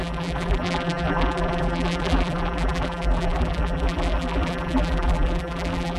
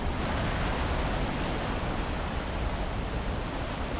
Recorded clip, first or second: second